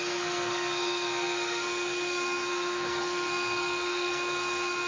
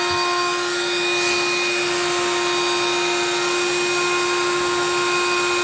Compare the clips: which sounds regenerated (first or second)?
first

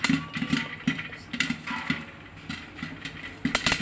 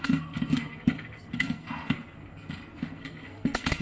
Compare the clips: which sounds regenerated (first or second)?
second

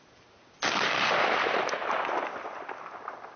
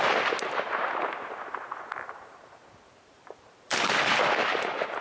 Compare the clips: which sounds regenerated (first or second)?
second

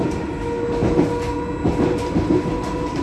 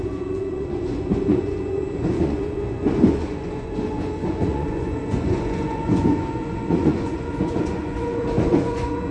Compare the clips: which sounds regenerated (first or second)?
second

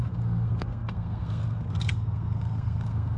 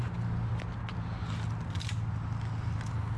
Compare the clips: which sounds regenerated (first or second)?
first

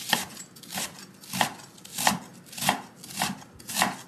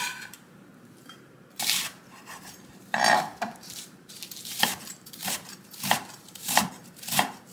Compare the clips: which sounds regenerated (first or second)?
second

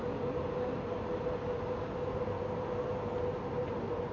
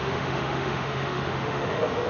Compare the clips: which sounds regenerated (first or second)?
second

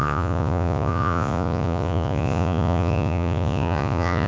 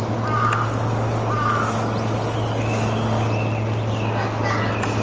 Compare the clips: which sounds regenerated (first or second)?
first